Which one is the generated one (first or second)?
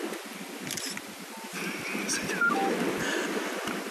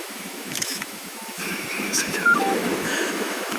second